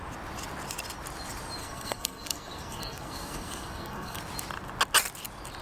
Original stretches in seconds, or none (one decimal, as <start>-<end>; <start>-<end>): 0.0-1.6; 4.2-5.6